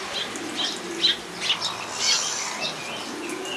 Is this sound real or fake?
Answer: real